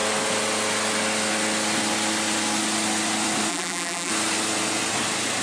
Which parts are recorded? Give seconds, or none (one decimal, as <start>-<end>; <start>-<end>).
0.0-3.5; 4.1-5.4